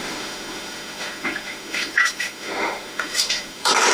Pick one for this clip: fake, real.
fake